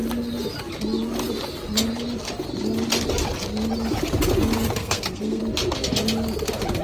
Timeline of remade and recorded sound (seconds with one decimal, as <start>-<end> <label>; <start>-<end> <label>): 0.0-4.8 recorded; 4.8-5.4 remade; 5.4-6.8 recorded